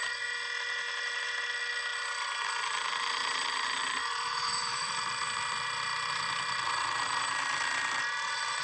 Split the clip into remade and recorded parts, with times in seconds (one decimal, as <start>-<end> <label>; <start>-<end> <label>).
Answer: 0.0-4.3 recorded; 4.3-4.9 remade; 4.9-8.6 recorded